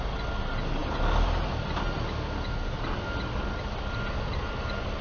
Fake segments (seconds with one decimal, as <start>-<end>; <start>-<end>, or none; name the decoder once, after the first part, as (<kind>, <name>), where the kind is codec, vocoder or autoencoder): none